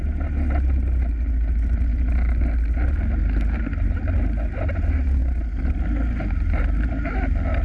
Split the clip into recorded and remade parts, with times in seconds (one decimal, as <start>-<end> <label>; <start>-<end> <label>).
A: 0.0-7.6 recorded

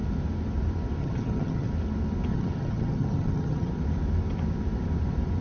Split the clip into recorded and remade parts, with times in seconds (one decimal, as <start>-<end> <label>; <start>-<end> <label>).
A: 0.0-1.0 recorded; 1.0-1.7 remade; 1.7-2.3 recorded; 2.3-3.7 remade; 3.7-5.4 recorded

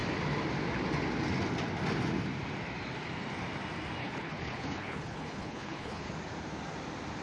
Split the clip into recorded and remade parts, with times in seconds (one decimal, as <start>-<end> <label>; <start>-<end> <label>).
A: 0.0-4.0 recorded; 4.0-6.1 remade; 6.1-7.2 recorded

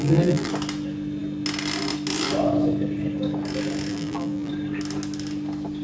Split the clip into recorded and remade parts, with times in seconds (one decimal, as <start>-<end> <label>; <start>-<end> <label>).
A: 0.0-0.5 remade; 0.5-3.9 recorded; 3.9-4.5 remade; 4.5-5.8 recorded